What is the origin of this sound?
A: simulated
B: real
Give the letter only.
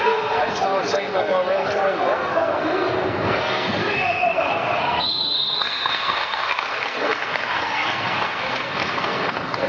A